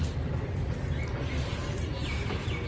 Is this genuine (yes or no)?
yes